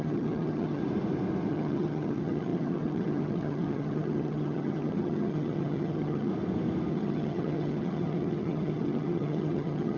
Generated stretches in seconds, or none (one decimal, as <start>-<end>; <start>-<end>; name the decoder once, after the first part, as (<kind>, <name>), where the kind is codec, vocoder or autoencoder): 0.0-0.8 (vocoder, HiFi-GAN); 1.5-6.3; 6.9-10.0